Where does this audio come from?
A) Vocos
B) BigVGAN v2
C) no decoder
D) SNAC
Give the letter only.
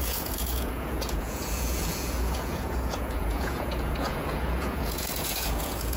A